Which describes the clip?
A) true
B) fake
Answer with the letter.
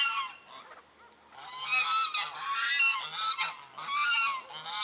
A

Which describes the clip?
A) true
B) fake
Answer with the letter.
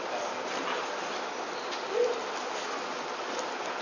A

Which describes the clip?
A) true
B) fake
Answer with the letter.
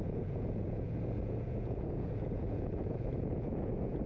B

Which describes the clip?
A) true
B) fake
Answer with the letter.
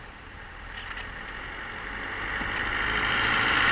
A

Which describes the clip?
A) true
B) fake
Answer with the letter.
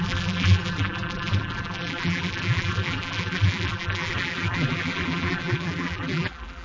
B